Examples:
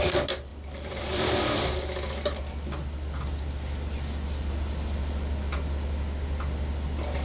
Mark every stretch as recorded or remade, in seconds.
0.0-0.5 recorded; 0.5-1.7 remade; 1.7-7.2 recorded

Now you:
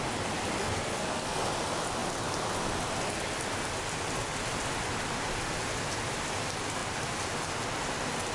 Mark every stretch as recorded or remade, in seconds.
0.0-0.6 recorded; 0.6-1.4 remade; 1.4-8.3 recorded

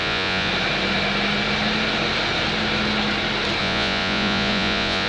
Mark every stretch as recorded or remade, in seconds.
0.0-0.5 remade; 0.5-3.6 recorded; 3.6-5.1 remade